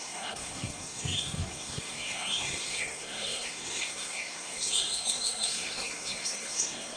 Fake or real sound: fake